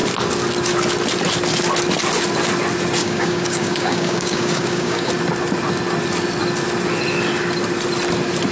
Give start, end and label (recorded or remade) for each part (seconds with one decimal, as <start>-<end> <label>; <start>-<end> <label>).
0.0-3.0 recorded; 3.0-5.1 remade; 5.1-8.5 recorded